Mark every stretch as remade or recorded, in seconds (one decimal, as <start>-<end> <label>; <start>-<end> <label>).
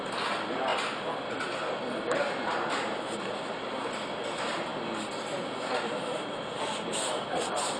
0.0-7.8 recorded